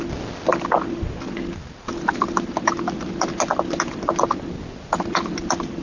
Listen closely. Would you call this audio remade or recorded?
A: recorded